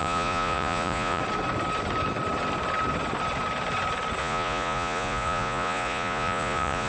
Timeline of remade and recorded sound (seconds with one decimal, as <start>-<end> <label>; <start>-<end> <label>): 0.0-1.2 remade; 1.2-4.2 recorded; 4.2-6.9 remade